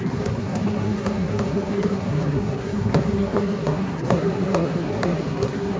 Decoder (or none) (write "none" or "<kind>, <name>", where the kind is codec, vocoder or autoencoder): codec, SNAC